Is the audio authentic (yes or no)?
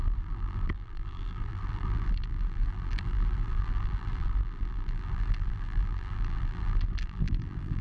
no